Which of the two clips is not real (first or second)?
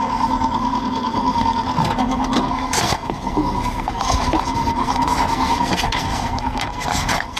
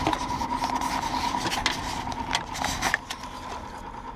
first